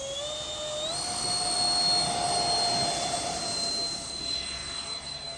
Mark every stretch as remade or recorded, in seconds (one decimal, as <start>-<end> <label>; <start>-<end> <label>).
0.0-5.4 recorded